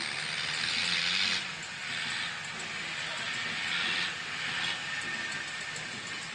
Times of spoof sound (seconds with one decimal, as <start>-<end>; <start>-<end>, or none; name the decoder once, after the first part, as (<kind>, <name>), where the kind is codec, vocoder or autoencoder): none